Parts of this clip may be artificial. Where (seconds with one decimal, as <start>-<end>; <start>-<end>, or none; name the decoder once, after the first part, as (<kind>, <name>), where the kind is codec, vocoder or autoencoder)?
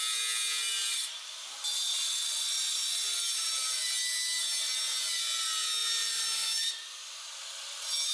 5.8-6.7 (vocoder, BigVGAN v2)